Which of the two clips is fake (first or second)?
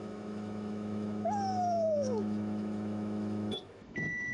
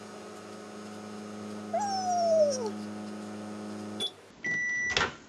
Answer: first